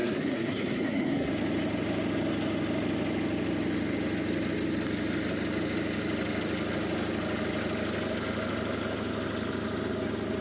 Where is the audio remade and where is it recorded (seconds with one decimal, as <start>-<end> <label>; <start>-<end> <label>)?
0.0-1.3 remade; 1.3-10.4 recorded